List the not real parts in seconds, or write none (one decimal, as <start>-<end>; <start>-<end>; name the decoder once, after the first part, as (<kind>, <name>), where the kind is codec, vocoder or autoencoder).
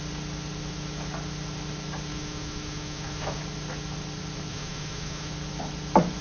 2.1-3.4 (autoencoder, DAC-VAE); 4.5-5.3